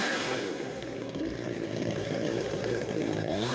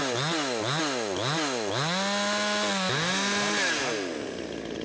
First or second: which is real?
second